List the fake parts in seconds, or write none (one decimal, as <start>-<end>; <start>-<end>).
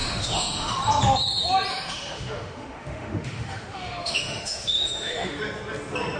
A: 0.0-0.8; 1.7-5.4